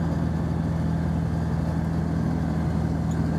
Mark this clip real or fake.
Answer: real